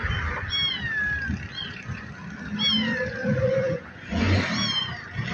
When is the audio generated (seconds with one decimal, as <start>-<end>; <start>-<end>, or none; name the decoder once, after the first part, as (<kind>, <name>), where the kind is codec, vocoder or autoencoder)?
1.6-2.1 (vocoder, Vocos); 3.2-4.4